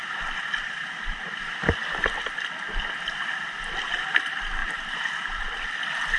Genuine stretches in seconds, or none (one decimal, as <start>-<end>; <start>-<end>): 0.0-4.6; 5.4-6.2